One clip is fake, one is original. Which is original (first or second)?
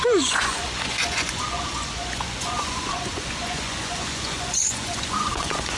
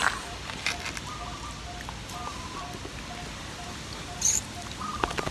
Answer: second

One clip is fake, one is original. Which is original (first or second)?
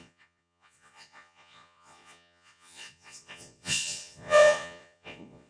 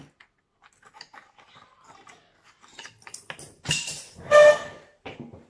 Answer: second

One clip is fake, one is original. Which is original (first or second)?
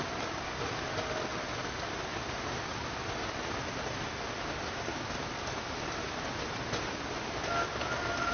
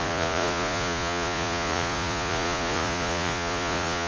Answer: first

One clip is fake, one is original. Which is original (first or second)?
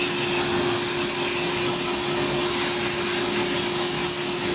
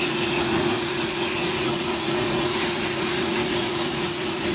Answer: first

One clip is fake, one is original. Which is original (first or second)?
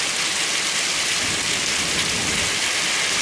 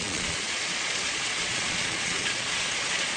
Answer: first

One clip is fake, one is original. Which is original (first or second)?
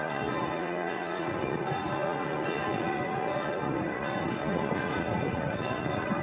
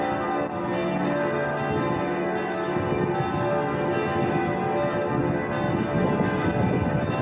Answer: second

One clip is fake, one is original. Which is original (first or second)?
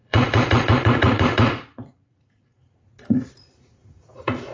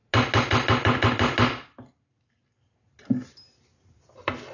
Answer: second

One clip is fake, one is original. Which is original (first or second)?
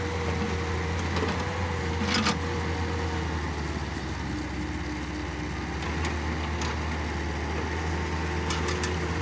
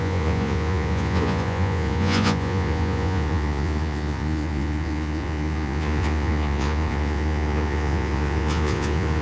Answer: first